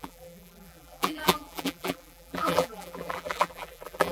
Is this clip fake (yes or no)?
yes